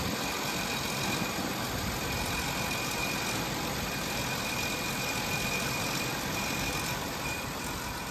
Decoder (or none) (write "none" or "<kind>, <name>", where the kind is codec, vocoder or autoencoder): none